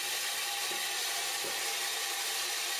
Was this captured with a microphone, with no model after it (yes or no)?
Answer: yes